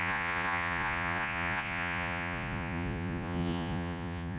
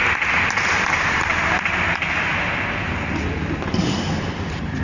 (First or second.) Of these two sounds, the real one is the second